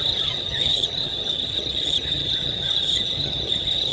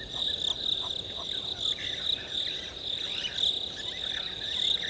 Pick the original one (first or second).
second